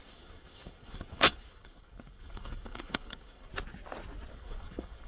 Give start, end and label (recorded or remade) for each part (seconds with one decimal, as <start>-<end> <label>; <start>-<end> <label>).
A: 0.0-3.5 remade; 3.5-4.3 recorded; 4.3-5.1 remade

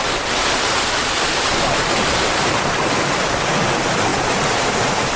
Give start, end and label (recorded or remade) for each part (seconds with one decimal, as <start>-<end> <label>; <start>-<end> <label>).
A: 0.0-0.4 recorded; 0.4-3.5 remade; 3.5-5.2 recorded

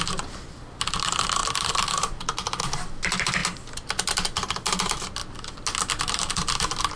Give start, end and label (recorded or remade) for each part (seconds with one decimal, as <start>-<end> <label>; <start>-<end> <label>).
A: 0.0-1.4 recorded; 1.4-2.6 remade; 2.6-7.0 recorded

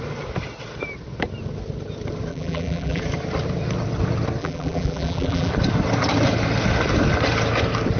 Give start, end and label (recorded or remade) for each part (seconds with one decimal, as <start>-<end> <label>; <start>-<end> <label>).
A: 0.0-2.3 recorded; 2.3-3.0 remade; 3.0-4.4 recorded; 4.4-5.5 remade; 5.5-8.0 recorded